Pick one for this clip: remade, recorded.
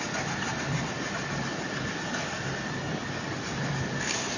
recorded